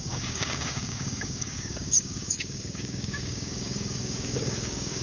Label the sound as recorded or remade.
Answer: remade